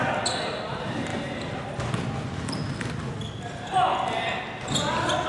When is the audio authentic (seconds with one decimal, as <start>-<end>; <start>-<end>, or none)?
0.0-5.3